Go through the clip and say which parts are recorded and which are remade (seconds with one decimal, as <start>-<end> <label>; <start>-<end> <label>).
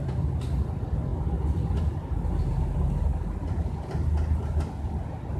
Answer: 0.0-5.4 recorded